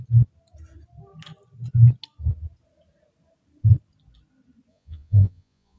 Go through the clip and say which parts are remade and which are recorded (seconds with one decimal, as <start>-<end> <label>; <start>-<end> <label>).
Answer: 0.0-4.7 recorded; 4.7-5.8 remade